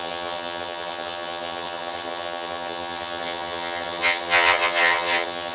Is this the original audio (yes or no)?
no